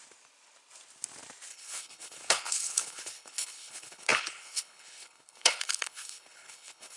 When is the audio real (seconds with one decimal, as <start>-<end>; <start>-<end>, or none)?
0.0-1.5